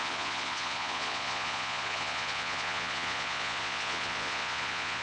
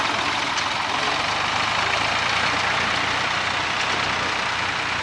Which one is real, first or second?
second